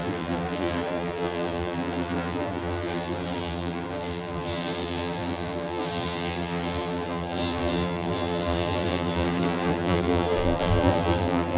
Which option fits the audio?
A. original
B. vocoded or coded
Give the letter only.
B